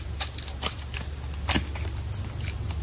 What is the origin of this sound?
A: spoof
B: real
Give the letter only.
B